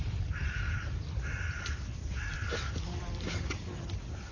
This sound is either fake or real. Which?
real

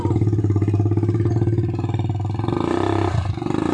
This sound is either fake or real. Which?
real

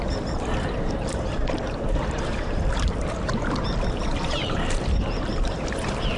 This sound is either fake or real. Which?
fake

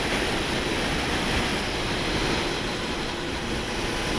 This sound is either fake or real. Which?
real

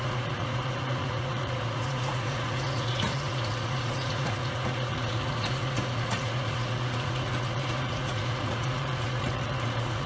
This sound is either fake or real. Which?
fake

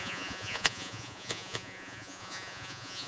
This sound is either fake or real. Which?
fake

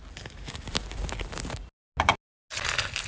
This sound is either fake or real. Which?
real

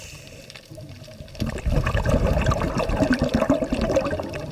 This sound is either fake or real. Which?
fake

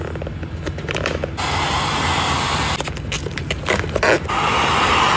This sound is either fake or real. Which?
real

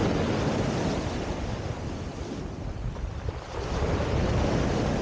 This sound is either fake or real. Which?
real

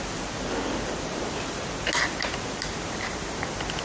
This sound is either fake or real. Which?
real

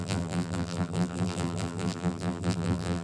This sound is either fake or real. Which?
fake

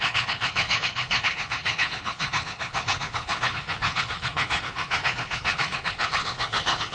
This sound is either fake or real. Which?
fake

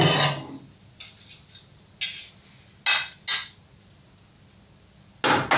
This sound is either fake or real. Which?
real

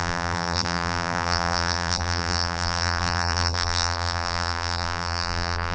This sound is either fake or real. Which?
fake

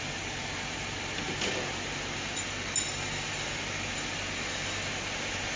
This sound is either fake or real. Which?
real